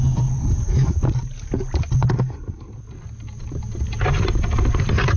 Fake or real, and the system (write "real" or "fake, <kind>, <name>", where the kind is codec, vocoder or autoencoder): real